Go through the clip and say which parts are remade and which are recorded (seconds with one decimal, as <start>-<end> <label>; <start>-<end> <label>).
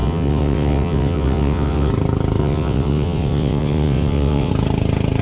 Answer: 0.0-1.9 remade; 1.9-2.4 recorded; 2.4-4.5 remade; 4.5-5.2 recorded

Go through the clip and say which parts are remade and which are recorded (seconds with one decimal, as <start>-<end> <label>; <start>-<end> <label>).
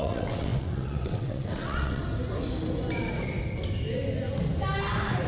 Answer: 0.0-2.0 remade; 2.0-5.3 recorded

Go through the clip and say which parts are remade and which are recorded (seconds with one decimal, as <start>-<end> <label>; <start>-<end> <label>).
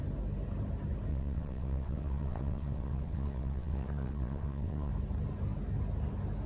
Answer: 0.0-1.1 recorded; 1.1-4.9 remade; 4.9-6.5 recorded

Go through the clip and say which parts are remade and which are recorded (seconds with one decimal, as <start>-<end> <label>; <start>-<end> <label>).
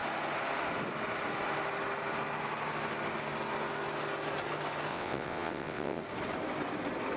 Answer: 0.0-4.9 recorded; 4.9-6.0 remade; 6.0-7.2 recorded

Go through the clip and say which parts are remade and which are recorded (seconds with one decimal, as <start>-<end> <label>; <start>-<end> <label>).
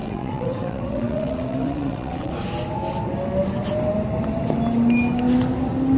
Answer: 0.0-2.3 remade; 2.3-6.0 recorded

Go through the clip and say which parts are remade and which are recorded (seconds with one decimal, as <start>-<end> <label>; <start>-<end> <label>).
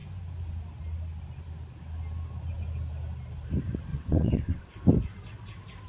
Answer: 0.0-3.9 recorded; 3.9-4.7 remade; 4.7-5.9 recorded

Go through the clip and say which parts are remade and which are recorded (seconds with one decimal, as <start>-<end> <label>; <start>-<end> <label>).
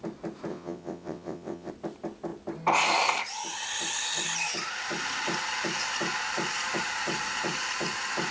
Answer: 0.0-0.5 recorded; 0.5-1.7 remade; 1.7-8.3 recorded